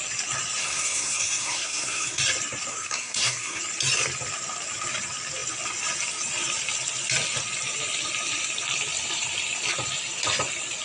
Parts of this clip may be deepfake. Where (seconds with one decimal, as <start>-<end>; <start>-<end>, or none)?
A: 0.6-2.2; 2.7-3.6